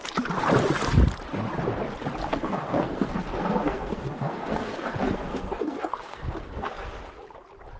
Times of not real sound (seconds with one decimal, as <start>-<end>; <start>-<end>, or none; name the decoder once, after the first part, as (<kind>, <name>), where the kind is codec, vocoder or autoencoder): 2.3-7.0 (codec, SNAC)